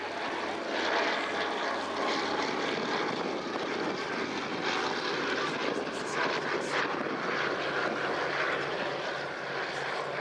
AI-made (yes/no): no